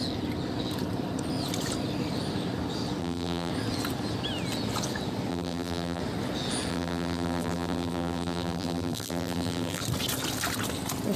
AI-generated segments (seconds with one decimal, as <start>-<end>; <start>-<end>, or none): 3.0-3.5; 5.3-6.0; 6.7-9.8

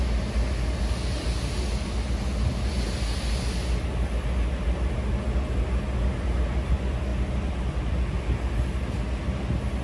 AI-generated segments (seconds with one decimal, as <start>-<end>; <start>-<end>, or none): 7.1-7.7